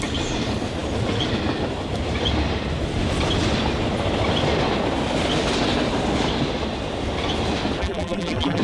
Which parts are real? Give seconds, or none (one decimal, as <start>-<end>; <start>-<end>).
0.0-7.8

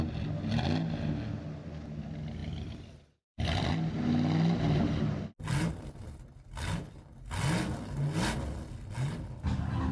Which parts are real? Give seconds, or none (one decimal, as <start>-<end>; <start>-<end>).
0.0-2.4; 3.7-9.9